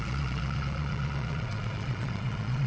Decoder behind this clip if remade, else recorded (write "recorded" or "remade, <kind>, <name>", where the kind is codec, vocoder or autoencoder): remade, vocoder, Vocos